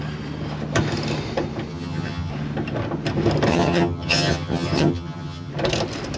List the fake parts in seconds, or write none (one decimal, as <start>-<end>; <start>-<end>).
1.7-2.3; 3.5-5.5